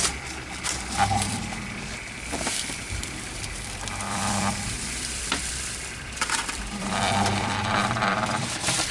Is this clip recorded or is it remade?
remade